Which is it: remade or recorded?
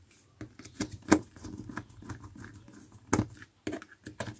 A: recorded